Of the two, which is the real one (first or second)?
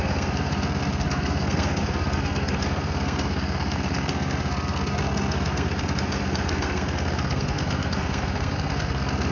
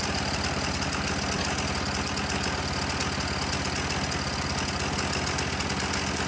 second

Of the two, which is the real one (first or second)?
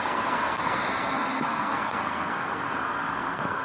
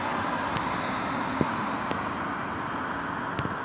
second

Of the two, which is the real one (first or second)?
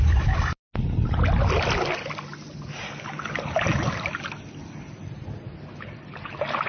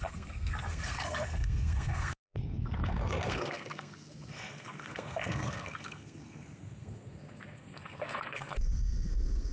first